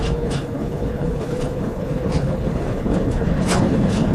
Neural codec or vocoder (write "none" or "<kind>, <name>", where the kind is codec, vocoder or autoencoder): codec, HILCodec